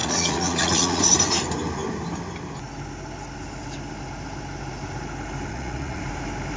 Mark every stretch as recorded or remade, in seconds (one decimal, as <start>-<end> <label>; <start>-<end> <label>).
0.0-1.0 remade; 1.0-5.5 recorded; 5.5-6.0 remade; 6.0-6.6 recorded